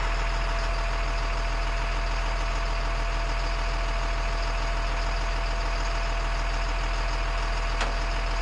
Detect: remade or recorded recorded